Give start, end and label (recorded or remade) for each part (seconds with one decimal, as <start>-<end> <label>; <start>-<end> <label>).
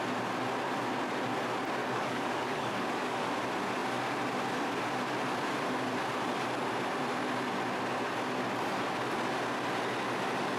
0.0-1.8 recorded; 1.8-3.4 remade; 3.4-10.6 recorded